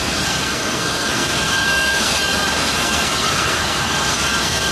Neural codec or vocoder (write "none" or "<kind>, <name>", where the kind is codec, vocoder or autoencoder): codec, SNAC